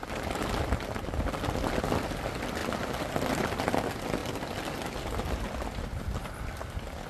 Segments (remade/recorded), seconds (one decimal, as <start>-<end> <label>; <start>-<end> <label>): 0.0-7.1 recorded